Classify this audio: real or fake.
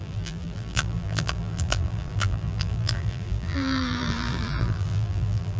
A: fake